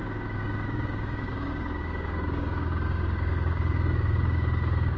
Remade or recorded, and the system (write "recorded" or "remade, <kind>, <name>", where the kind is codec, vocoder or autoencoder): remade, codec, DAC